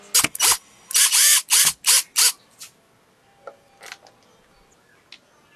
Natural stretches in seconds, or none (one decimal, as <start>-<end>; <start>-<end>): 0.0-5.6

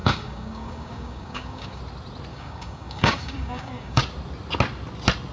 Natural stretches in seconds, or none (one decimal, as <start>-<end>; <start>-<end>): 1.8-2.3; 4.0-5.3